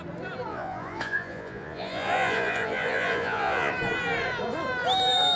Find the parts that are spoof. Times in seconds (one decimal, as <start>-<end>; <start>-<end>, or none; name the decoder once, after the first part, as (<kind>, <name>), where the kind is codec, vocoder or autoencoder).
0.5-3.7 (vocoder, Vocos)